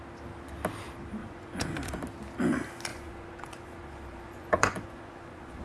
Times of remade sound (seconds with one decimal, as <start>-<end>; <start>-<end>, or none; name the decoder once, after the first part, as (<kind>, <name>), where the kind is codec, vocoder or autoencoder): 1.2-1.8 (vocoder, Vocos); 2.9-5.6